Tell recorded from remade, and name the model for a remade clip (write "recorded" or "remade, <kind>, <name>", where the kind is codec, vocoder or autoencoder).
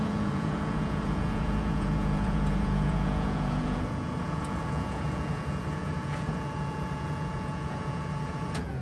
remade, vocoder, Vocos